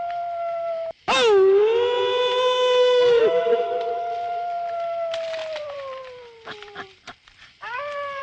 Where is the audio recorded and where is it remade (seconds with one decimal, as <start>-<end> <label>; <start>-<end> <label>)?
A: 0.0-5.4 recorded; 5.4-8.2 remade